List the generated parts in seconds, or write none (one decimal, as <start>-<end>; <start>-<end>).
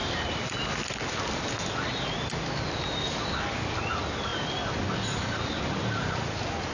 none